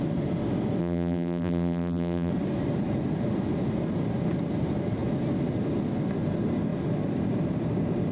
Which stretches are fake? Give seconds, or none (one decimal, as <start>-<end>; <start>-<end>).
0.8-2.3